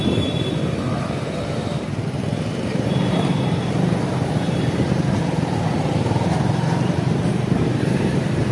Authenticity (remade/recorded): remade